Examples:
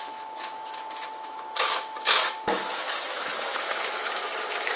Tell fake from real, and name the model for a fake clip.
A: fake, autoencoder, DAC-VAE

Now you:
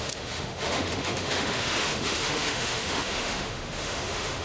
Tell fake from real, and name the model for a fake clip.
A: fake, autoencoder, DAC-VAE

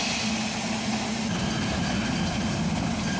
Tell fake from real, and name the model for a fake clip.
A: real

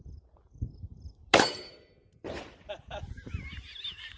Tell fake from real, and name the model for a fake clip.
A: real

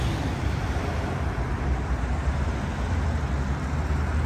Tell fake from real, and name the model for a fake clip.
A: real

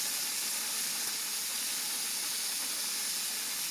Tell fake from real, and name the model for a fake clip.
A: real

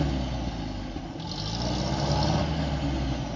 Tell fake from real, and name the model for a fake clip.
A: real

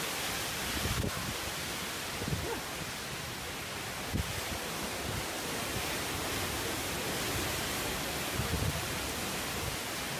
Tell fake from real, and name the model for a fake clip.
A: real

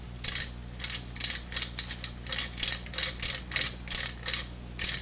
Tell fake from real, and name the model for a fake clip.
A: real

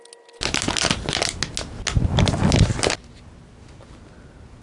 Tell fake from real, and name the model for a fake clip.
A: real